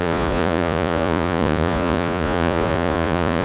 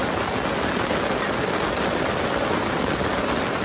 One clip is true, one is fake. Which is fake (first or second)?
first